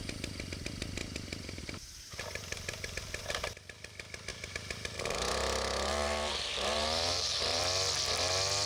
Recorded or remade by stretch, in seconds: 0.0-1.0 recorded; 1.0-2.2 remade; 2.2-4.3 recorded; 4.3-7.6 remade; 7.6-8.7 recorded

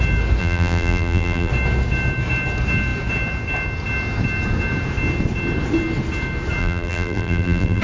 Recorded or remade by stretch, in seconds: 0.0-0.4 recorded; 0.4-1.5 remade; 1.5-6.6 recorded; 6.6-7.8 remade